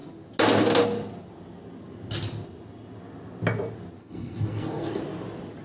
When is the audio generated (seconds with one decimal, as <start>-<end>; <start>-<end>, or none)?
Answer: 4.0-5.0